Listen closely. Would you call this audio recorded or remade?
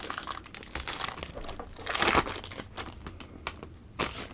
recorded